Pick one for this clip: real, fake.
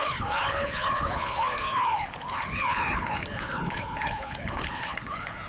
fake